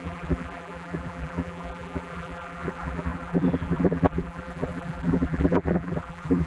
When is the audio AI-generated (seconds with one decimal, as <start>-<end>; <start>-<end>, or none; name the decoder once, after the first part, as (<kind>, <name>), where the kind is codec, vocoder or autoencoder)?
0.0-6.5 (vocoder, BigVGAN v2)